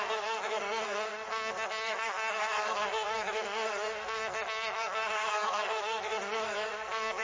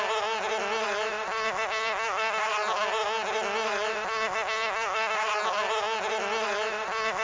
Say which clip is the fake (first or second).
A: first